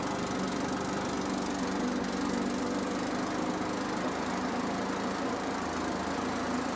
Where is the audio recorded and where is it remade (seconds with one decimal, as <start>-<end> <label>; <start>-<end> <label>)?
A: 0.0-6.8 recorded